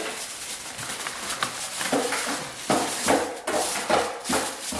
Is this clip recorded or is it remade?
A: remade